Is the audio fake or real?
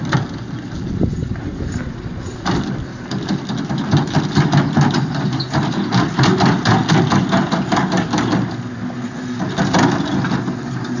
real